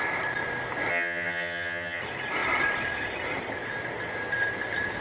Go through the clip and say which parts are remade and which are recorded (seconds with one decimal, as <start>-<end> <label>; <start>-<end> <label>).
0.0-0.9 recorded; 0.9-2.0 remade; 2.0-5.0 recorded